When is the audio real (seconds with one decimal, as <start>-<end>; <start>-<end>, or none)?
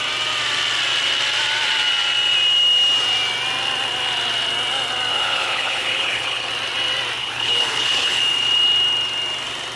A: 0.0-5.1; 6.5-7.2; 8.2-9.8